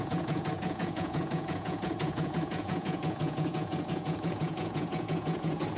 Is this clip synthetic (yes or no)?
yes